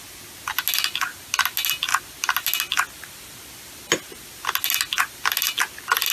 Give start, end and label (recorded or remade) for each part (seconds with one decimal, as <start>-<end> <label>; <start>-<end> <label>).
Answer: 0.0-6.1 recorded